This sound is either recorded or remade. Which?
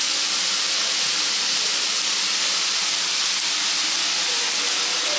recorded